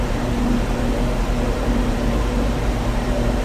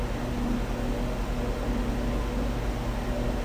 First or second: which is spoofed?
first